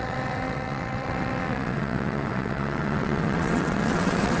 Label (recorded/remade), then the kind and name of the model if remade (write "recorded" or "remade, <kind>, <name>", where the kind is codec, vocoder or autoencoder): remade, vocoder, WaveNeXt